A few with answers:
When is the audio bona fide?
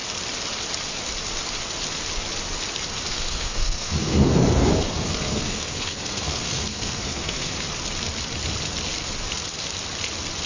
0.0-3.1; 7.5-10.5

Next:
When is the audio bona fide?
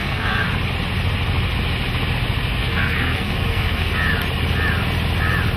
0.5-2.6; 3.9-5.6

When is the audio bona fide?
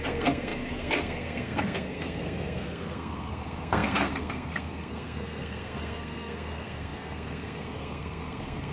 none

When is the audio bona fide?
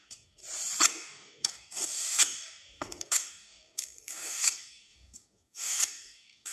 0.4-0.9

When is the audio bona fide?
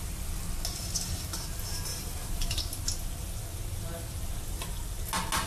0.0-1.9; 2.6-5.5